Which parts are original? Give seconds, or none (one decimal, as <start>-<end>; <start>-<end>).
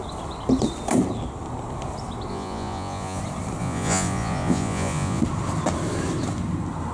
0.0-2.3; 3.2-3.6; 5.2-6.9